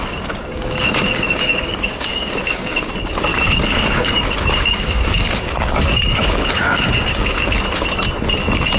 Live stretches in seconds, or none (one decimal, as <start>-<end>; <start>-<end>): 0.0-0.4; 2.9-3.3; 7.5-8.8